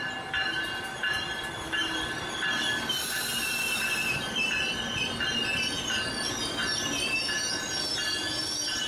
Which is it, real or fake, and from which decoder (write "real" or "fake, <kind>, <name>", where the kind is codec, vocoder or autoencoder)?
real